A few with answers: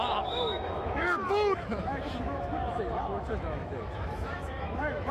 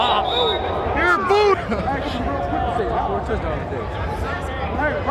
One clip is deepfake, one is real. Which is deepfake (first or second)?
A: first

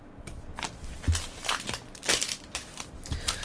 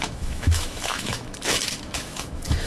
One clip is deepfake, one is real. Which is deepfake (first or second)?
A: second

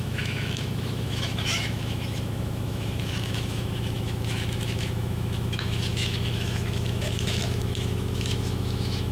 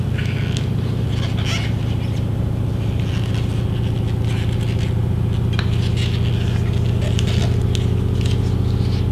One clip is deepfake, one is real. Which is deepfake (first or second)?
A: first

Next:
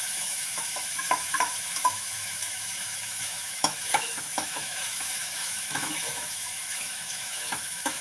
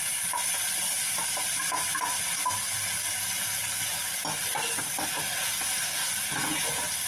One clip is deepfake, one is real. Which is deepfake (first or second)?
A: first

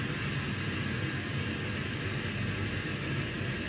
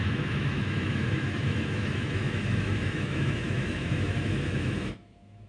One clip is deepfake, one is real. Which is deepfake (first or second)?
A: second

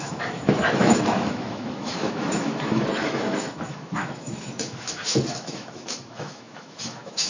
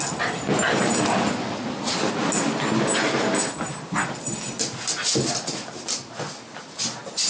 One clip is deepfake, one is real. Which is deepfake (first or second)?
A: first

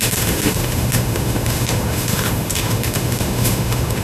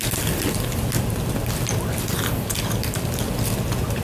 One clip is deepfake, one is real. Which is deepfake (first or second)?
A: first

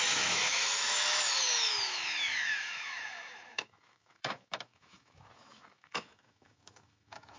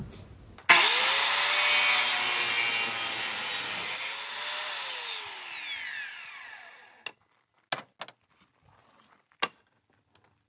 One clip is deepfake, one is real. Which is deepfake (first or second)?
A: first